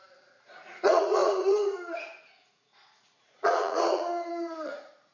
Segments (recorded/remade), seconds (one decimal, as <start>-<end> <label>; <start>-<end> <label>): 0.0-5.1 remade

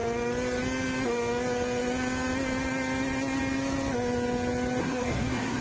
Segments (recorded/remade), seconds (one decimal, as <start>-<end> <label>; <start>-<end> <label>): 0.0-4.8 recorded; 4.8-5.6 remade

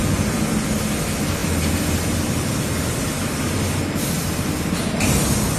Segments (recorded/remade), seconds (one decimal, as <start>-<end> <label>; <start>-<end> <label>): 0.0-5.6 recorded

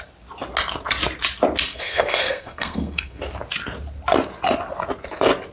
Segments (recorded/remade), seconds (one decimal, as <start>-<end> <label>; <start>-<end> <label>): 0.0-1.7 recorded; 1.7-3.2 remade; 3.2-5.5 recorded

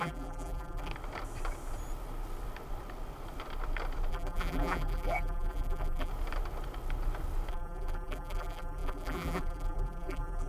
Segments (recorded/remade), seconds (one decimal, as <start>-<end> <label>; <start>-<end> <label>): 0.0-0.9 remade; 0.9-4.1 recorded; 4.1-6.1 remade; 6.1-7.5 recorded; 7.5-10.5 remade

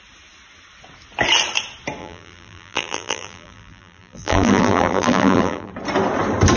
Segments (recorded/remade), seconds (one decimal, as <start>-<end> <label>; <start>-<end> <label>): 0.0-2.0 recorded; 2.0-5.7 remade; 5.7-6.6 recorded

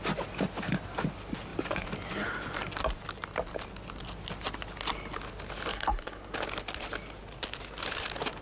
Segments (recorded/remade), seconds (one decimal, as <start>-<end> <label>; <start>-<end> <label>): 0.0-5.7 recorded; 5.7-6.2 remade; 6.2-8.4 recorded